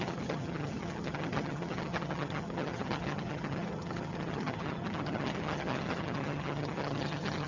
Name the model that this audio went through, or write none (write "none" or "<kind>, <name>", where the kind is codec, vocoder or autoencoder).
vocoder, HiFi-GAN